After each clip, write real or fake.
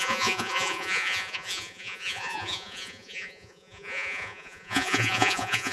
fake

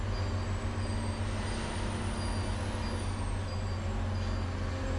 real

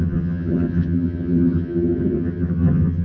fake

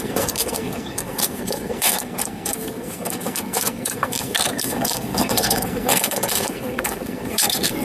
fake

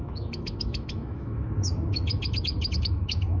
fake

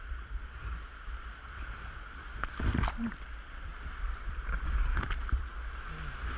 real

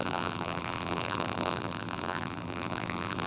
fake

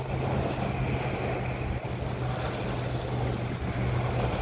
real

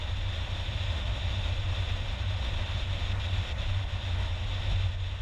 real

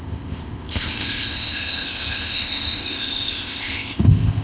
fake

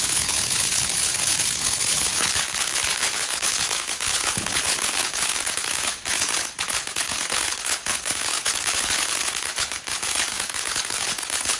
fake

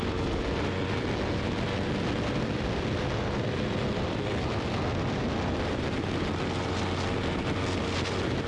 real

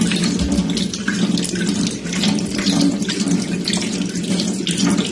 fake